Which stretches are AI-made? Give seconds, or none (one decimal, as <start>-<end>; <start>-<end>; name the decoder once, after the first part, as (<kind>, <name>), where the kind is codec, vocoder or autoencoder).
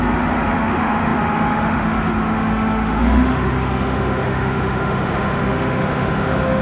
0.0-6.6 (autoencoder, DAC-VAE)